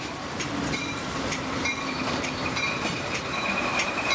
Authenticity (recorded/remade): remade